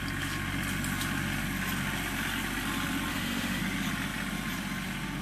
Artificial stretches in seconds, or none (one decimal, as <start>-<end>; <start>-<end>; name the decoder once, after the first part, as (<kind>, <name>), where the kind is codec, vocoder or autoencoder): 3.1-3.6 (autoencoder, DAC-VAE)